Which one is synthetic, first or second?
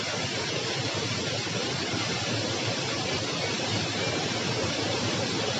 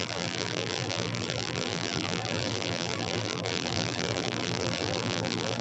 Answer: second